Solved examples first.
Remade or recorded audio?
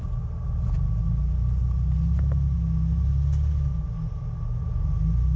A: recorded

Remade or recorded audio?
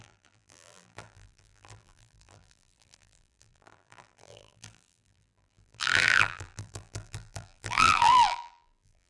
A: remade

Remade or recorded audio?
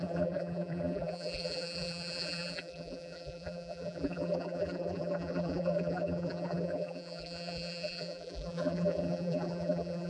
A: remade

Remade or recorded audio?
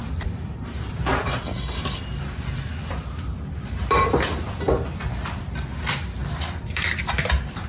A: remade